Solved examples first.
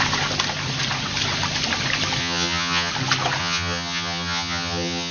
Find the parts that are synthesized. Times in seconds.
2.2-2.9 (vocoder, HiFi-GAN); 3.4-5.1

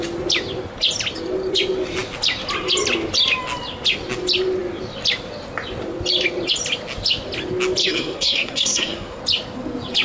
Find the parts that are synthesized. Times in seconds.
7.8-9.2 (codec, SNAC)

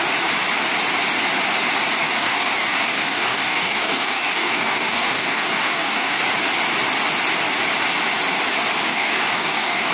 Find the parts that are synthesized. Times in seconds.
2.0-6.2 (codec, DAC); 8.9-9.9

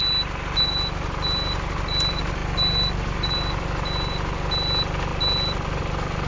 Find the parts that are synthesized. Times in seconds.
2.4-3.3 (vocoder, BigVGAN v2); 5.1-5.8

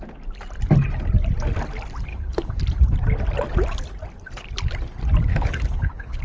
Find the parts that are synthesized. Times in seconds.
2.1-2.6 (codec, HILCodec); 5.3-6.2

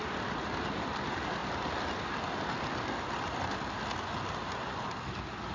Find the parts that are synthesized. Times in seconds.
none

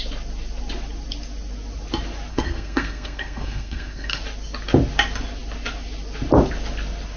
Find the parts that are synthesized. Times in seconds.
2.3-4.2 (codec, SNAC)